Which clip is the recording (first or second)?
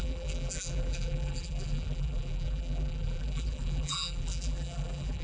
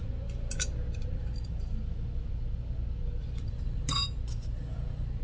second